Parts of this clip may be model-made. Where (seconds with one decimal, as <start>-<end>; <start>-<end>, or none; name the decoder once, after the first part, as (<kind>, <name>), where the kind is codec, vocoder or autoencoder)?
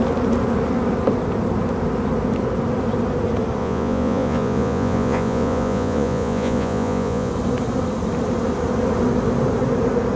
3.6-7.3 (vocoder, Vocos)